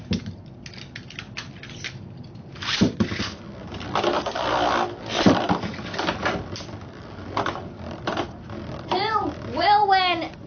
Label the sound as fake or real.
real